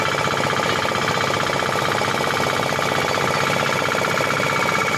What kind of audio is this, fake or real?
real